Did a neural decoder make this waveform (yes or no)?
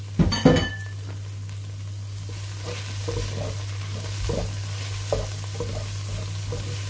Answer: no